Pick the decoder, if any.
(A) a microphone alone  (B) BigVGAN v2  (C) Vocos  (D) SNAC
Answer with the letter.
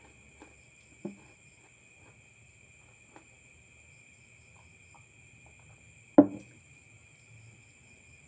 A